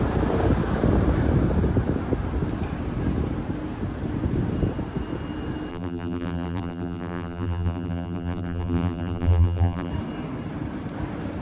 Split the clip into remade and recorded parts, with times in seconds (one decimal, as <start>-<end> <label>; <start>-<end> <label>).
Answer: 0.0-5.7 recorded; 5.7-9.9 remade; 9.9-11.4 recorded